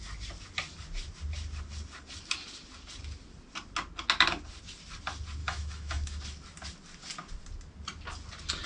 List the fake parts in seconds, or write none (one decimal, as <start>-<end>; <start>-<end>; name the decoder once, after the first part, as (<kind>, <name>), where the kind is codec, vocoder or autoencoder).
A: 5.4-6.2 (autoencoder, DAC-VAE)